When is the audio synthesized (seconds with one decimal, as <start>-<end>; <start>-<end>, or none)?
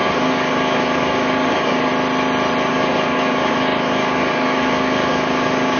0.0-1.9; 2.7-5.8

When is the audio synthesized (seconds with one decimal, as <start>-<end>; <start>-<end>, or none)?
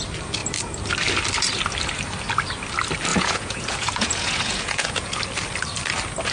3.1-5.2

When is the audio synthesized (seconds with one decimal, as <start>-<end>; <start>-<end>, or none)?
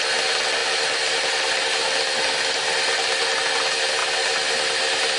none